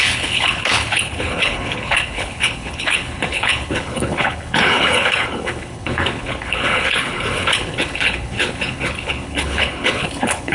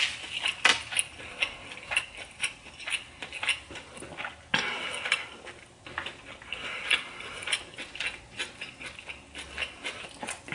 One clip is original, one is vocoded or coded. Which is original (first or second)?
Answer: second